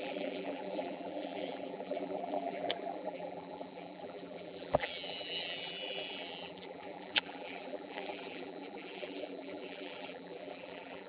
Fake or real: fake